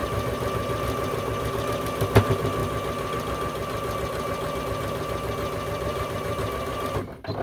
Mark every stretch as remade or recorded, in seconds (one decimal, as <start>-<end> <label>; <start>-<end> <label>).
0.0-5.9 recorded; 5.9-6.5 remade; 6.5-7.4 recorded